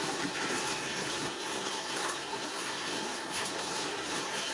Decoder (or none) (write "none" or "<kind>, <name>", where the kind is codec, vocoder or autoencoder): codec, SNAC